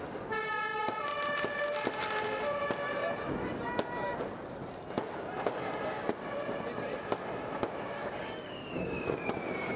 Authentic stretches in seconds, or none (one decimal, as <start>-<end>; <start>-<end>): 0.0-8.0; 9.4-9.8